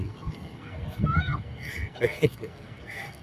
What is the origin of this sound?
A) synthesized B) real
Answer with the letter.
A